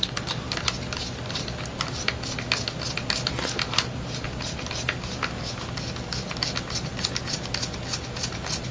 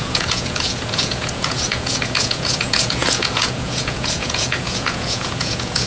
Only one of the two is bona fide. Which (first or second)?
first